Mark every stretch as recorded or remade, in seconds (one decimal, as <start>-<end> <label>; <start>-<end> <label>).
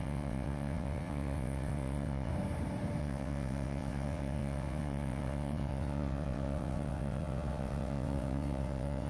0.0-2.3 remade; 2.3-3.0 recorded; 3.0-9.1 remade